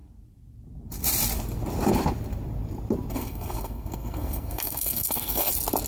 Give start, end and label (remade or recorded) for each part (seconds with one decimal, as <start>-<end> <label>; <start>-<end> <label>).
0.0-3.1 recorded; 3.1-5.5 remade; 5.5-5.9 recorded